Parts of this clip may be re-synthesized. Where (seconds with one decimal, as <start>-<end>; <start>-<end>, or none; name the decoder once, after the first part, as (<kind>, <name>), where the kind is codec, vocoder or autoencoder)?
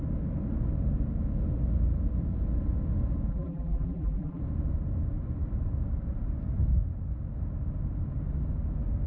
3.3-4.4 (vocoder, BigVGAN v2)